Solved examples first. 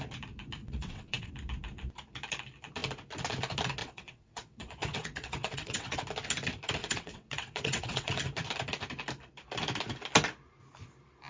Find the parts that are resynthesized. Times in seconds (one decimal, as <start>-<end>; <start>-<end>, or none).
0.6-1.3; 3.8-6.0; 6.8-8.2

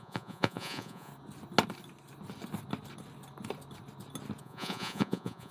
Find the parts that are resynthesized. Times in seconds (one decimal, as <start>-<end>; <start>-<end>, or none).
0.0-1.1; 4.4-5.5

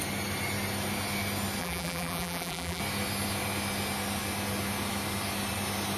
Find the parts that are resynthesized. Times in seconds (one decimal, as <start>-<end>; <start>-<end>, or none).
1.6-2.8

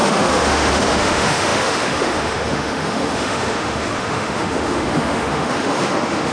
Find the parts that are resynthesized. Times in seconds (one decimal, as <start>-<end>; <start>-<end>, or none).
0.0-6.3

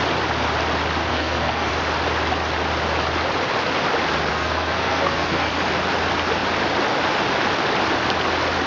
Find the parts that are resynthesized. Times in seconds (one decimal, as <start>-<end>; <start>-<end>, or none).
1.1-1.7; 4.3-5.5

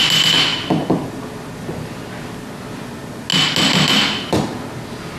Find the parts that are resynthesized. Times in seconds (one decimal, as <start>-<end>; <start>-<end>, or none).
none